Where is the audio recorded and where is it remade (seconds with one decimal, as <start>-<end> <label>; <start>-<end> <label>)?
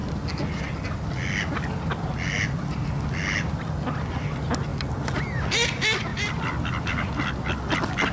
0.0-6.1 recorded; 6.1-6.8 remade; 6.8-8.1 recorded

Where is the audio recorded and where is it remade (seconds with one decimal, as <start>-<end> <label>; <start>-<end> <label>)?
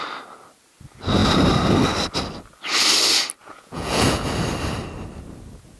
0.0-3.4 recorded; 3.4-4.3 remade; 4.3-5.8 recorded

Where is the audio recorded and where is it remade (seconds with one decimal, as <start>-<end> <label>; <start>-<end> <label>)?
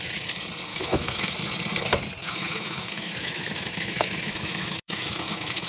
0.0-0.7 recorded; 0.7-1.3 remade; 1.3-2.2 recorded; 2.2-5.7 remade